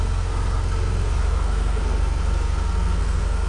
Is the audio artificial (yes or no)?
yes